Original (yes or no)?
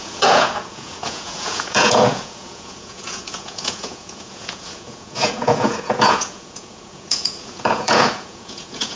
no